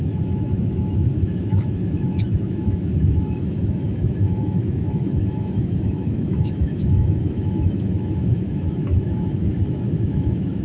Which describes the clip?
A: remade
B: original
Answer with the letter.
A